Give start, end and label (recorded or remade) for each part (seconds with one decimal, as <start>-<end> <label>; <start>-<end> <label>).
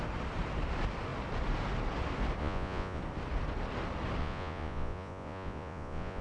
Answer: 0.0-2.4 recorded; 2.4-3.0 remade; 3.0-4.2 recorded; 4.2-6.2 remade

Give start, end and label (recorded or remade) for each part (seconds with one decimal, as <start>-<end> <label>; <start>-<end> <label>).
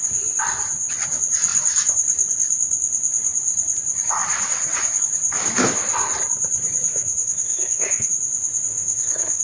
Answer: 0.0-6.9 recorded; 6.9-8.1 remade; 8.1-8.7 recorded; 8.7-9.4 remade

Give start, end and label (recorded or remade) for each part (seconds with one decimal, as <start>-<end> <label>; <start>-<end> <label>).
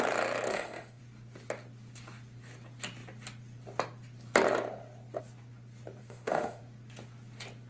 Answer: 0.0-0.5 recorded; 0.5-1.0 remade; 1.0-6.0 recorded; 6.0-6.6 remade; 6.6-7.7 recorded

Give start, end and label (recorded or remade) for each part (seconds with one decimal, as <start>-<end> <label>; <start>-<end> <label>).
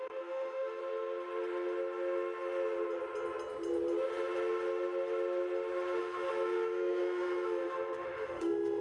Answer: 0.0-0.8 remade; 0.8-6.0 recorded; 6.0-8.8 remade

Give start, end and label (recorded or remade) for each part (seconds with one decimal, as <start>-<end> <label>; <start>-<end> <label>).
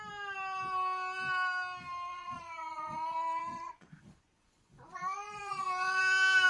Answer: 0.0-2.1 recorded; 2.1-6.0 remade; 6.0-6.5 recorded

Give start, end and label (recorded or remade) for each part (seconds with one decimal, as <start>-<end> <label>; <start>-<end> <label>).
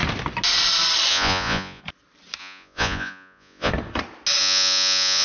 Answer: 0.0-1.1 recorded; 1.1-1.8 remade; 1.8-2.4 recorded; 2.4-3.7 remade; 3.7-4.4 recorded; 4.4-5.2 remade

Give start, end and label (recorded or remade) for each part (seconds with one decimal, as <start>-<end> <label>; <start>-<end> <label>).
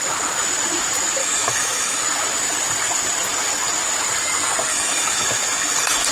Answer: 0.0-1.2 recorded; 1.2-2.0 remade; 2.0-4.7 recorded; 4.7-6.1 remade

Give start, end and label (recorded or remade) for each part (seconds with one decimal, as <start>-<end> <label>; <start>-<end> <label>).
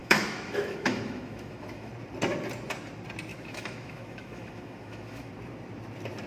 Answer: 0.0-1.9 remade; 1.9-3.3 recorded; 3.3-5.3 remade; 5.3-6.3 recorded